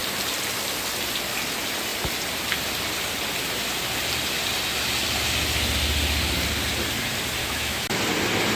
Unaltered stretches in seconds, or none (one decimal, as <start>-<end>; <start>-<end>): 0.0-7.4; 8.0-8.6